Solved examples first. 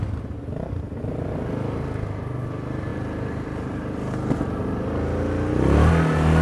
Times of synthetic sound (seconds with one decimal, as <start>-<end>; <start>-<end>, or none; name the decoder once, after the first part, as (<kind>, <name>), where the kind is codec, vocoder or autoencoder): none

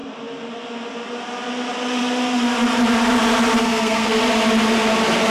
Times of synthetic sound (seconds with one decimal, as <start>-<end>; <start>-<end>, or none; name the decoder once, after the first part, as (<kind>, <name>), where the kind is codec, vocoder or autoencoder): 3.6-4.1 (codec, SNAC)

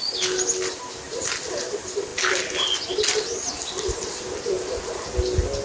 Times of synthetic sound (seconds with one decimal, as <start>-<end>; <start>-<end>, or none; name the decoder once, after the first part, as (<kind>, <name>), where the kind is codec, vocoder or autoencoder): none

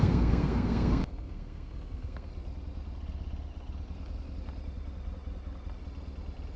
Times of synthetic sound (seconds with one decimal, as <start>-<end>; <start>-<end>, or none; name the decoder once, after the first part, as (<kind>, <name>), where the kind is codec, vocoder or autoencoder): 0.0-2.3 (codec, SNAC)

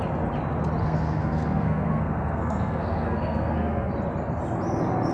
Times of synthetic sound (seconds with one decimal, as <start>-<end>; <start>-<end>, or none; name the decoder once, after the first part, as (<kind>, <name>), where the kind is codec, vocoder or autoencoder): 0.8-3.9 (codec, SNAC)

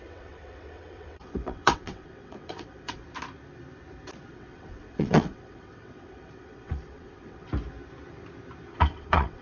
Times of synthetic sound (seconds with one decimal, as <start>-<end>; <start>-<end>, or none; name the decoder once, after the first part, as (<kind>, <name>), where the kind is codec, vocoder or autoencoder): 0.0-3.0 (vocoder, WaveNeXt); 4.3-7.5; 8.8-9.4